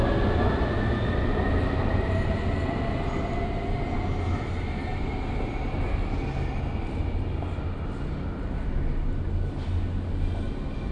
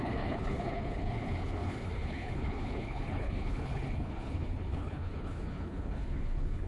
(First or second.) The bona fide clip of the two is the first